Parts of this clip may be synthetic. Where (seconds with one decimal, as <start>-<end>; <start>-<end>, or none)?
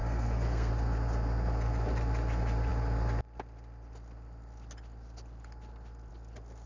0.0-0.7